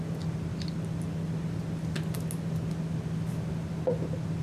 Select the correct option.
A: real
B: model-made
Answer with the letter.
A